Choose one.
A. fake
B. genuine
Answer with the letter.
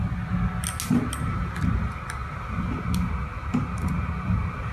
B